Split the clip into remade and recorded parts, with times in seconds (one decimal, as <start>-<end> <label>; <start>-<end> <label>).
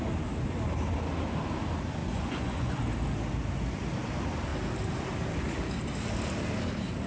0.0-2.0 recorded; 2.0-2.8 remade; 2.8-7.1 recorded